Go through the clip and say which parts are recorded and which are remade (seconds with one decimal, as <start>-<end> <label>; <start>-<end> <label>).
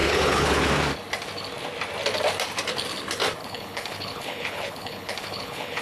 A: 0.0-0.7 remade; 0.7-3.4 recorded; 3.4-5.8 remade